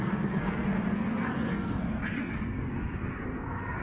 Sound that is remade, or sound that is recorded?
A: remade